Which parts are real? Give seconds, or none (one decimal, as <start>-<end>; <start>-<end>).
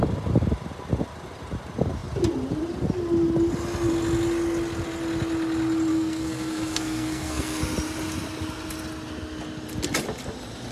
0.0-5.9; 7.6-10.7